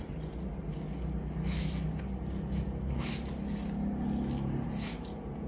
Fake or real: real